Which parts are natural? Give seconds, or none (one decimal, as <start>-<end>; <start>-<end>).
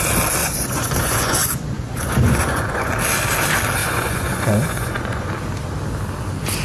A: 0.0-0.4; 2.9-3.8; 5.3-6.6